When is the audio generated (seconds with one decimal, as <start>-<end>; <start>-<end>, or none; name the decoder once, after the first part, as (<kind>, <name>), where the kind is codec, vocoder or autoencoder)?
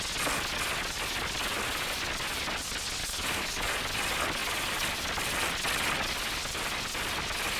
3.0-3.7 (codec, DAC)